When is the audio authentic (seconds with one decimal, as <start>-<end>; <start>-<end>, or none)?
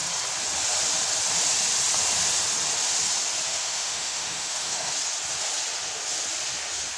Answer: 0.0-3.5; 4.9-7.0